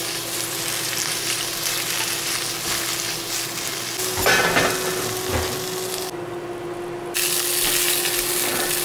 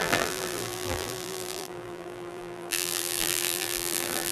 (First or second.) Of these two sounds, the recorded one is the first